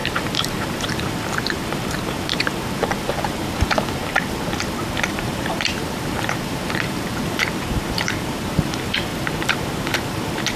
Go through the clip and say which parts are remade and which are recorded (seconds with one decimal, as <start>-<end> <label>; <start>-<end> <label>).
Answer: 0.0-4.0 remade; 4.0-5.1 recorded; 5.1-10.6 remade